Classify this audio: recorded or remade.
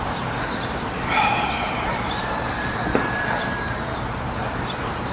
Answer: remade